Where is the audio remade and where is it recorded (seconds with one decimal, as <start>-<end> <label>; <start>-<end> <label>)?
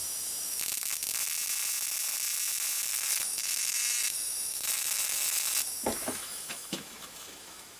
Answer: 0.0-0.6 remade; 0.6-2.9 recorded; 2.9-7.8 remade